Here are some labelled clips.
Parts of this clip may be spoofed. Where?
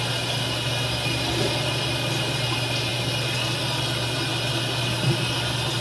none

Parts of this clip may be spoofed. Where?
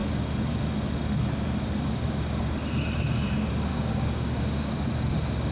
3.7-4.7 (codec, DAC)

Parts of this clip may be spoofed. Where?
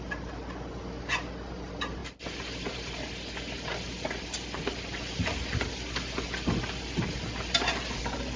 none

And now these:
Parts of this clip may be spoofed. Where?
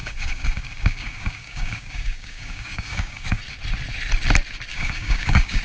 0.0-3.4 (codec, DAC); 4.7-5.6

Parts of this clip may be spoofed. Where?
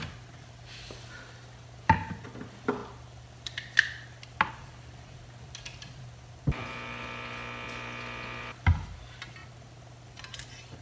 none